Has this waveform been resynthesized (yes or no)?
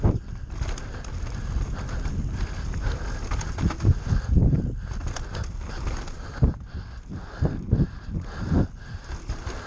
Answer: no